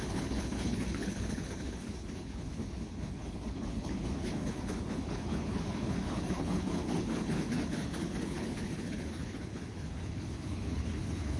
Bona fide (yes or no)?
no